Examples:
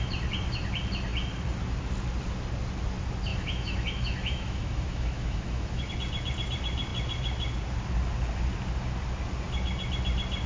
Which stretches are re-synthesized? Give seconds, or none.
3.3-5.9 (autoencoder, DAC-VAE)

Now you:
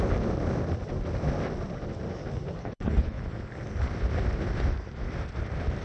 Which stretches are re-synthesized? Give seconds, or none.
2.6-3.2 (codec, HILCodec)

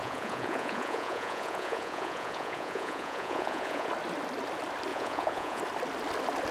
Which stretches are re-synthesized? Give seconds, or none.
0.0-3.9 (vocoder, Vocos); 4.9-5.6

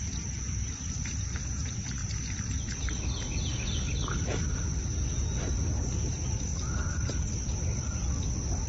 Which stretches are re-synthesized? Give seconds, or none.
2.0-4.8 (vocoder, BigVGAN v2)

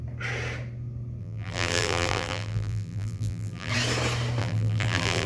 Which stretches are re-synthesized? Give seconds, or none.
1.2-3.7 (vocoder, BigVGAN v2); 4.4-5.3